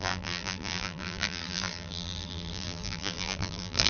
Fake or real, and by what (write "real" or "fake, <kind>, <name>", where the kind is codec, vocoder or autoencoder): fake, vocoder, BigVGAN v2